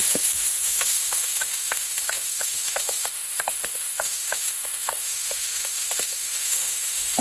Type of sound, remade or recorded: remade